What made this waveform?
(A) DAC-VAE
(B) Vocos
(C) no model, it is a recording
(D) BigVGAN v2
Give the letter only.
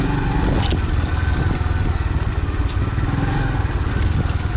C